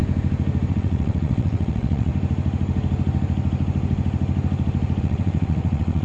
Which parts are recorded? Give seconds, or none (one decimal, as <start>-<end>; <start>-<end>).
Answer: 0.0-0.7; 2.1-5.0